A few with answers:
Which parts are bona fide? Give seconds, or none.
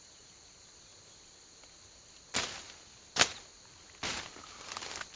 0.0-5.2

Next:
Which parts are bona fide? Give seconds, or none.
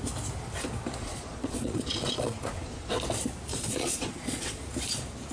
0.0-1.0; 2.9-3.5; 4.6-5.3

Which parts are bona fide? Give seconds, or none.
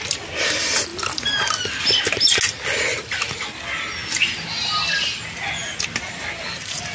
0.0-6.9